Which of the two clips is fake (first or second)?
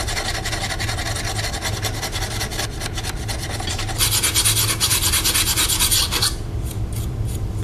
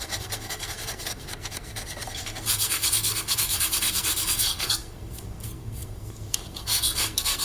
second